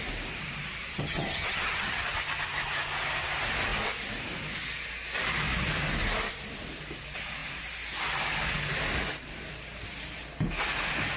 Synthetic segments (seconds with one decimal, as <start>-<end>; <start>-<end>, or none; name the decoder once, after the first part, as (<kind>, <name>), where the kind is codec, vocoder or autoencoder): 0.9-2.0 (vocoder, HiFi-GAN)